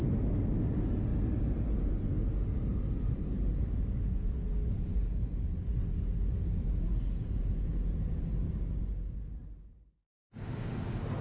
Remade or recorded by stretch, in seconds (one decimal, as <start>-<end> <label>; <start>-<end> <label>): 0.0-11.2 recorded